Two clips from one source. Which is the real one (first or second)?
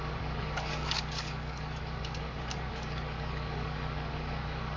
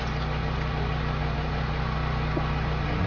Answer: second